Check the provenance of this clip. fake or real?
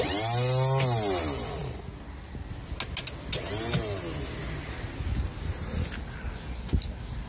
real